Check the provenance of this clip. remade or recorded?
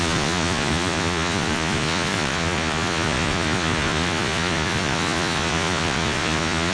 remade